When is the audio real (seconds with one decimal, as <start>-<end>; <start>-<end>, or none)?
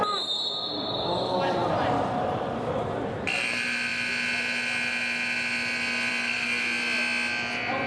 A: 0.0-1.6; 2.5-7.9